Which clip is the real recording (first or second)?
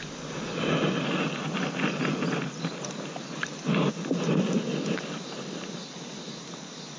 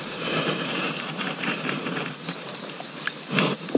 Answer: first